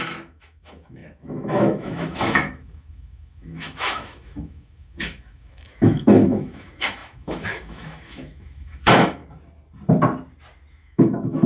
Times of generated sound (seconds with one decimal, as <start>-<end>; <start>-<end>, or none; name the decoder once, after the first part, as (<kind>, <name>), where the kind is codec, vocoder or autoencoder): 0.0-9.2 (autoencoder, DAC-VAE); 10.7-11.5